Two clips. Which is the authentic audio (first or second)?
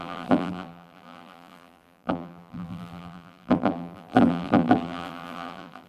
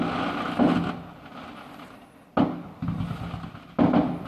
second